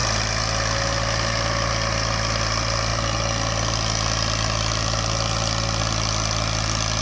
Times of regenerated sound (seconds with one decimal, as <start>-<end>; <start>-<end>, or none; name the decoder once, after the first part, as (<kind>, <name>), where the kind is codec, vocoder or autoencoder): none